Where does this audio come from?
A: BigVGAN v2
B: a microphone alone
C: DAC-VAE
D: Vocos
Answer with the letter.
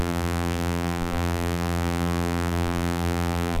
A